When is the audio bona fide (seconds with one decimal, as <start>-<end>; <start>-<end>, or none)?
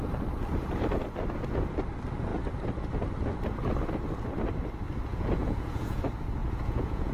0.0-5.1; 6.0-6.4